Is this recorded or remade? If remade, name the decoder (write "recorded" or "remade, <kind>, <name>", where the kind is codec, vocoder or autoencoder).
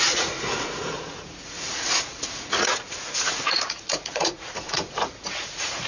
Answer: remade, vocoder, Vocos